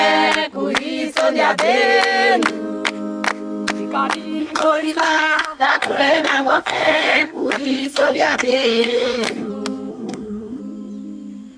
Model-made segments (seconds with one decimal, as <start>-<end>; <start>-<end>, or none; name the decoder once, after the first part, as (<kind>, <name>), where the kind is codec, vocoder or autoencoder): 4.4-9.5 (codec, SNAC); 9.9-10.6